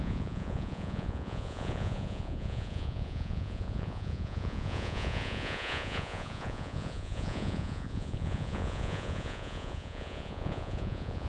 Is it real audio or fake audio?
fake